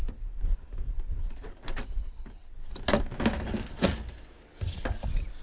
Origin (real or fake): real